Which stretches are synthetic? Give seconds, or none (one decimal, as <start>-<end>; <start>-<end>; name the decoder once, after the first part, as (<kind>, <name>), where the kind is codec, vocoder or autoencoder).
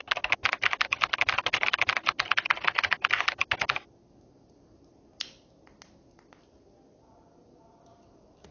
none